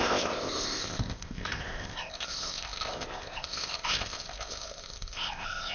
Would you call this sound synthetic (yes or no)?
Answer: yes